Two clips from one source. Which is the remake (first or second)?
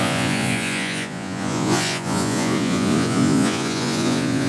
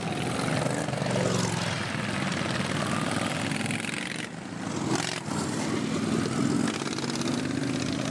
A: first